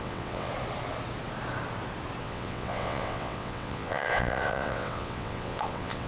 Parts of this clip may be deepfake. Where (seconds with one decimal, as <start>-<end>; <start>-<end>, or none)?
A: 0.0-0.5; 2.2-6.1